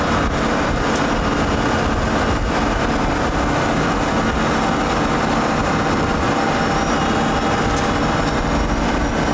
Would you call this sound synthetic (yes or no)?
no